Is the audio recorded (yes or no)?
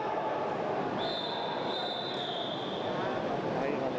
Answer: yes